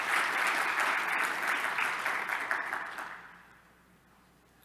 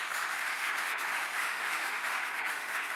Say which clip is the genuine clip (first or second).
first